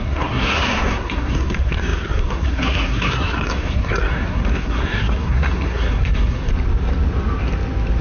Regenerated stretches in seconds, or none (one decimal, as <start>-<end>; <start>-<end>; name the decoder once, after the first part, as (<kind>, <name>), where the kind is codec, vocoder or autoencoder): 0.0-6.5 (codec, SNAC)